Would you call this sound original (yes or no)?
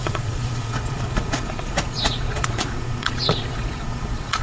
no